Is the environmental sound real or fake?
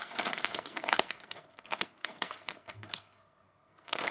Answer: fake